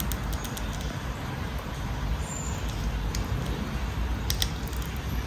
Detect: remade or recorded recorded